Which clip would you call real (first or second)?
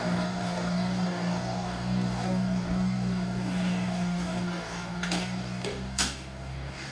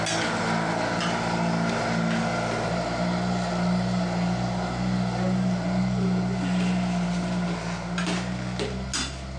second